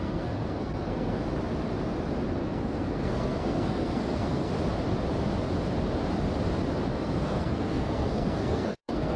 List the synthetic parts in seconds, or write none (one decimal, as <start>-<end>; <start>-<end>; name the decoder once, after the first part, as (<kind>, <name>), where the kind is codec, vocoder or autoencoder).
0.0-1.2 (codec, SNAC); 2.4-4.5; 6.9-9.2